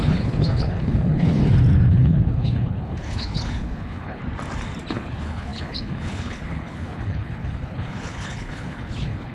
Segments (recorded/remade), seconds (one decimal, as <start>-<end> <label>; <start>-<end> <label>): 0.0-1.4 remade; 1.4-1.9 recorded; 1.9-4.2 remade; 4.2-4.9 recorded; 4.9-9.3 remade